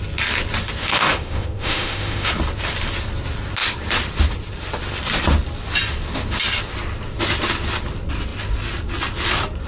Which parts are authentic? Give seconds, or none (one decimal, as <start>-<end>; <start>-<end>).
0.0-0.8; 2.3-9.7